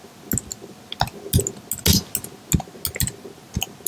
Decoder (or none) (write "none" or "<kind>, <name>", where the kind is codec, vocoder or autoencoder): none